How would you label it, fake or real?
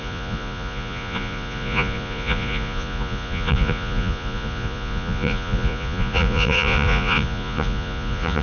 fake